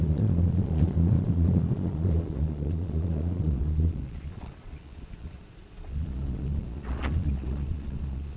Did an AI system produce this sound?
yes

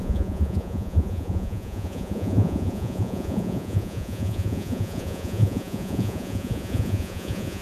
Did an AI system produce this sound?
yes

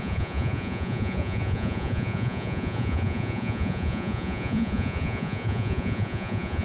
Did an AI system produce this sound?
yes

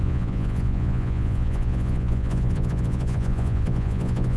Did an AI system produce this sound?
yes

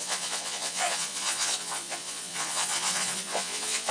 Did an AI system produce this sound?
yes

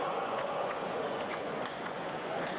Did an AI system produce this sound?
yes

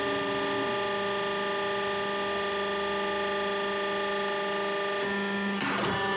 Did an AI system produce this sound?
no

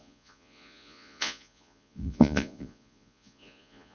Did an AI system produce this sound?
yes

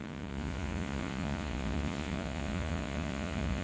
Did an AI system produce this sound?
yes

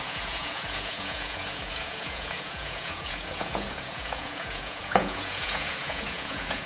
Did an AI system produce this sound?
yes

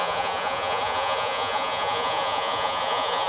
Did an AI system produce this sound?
yes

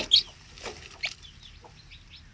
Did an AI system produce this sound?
no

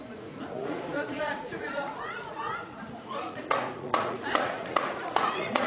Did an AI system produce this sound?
yes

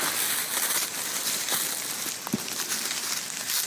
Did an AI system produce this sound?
no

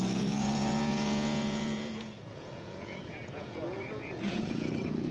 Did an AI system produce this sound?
yes